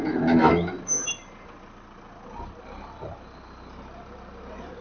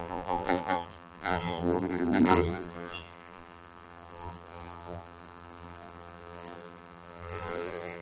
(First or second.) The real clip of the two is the first